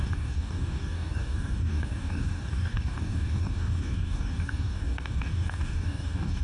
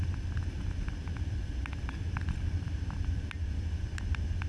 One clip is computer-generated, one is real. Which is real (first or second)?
second